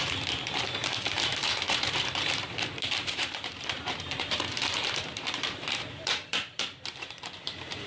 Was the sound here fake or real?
fake